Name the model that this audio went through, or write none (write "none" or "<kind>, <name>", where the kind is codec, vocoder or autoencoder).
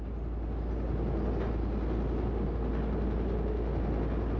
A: none